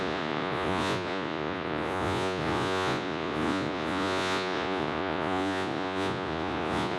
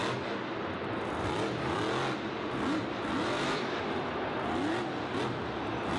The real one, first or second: second